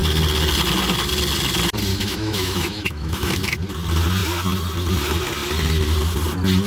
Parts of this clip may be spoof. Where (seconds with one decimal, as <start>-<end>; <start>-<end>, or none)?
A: 1.9-3.3